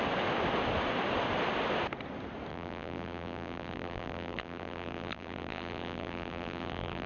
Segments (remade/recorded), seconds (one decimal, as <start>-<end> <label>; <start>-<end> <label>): 0.0-2.5 recorded; 2.5-7.1 remade